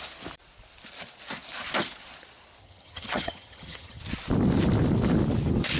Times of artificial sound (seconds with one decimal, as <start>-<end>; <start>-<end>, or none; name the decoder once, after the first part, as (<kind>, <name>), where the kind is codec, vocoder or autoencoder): 2.6-4.0 (vocoder, HiFi-GAN)